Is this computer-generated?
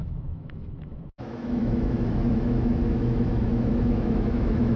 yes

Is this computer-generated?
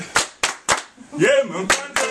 yes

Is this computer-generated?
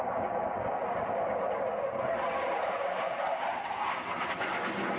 no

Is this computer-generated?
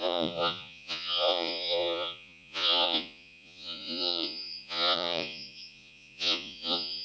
yes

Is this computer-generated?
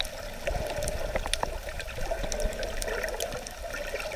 no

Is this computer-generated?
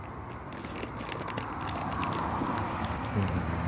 no